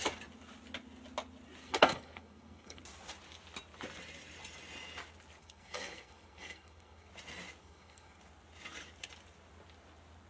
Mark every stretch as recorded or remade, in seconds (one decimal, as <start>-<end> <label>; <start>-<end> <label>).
0.0-1.6 recorded; 1.6-2.8 remade; 2.8-5.4 recorded; 5.4-7.1 remade; 7.1-7.6 recorded; 7.6-8.2 remade; 8.2-10.3 recorded